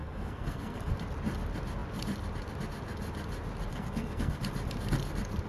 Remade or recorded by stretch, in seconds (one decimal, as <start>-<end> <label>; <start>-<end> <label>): 0.0-0.9 remade; 0.9-3.7 recorded; 3.7-4.4 remade; 4.4-5.5 recorded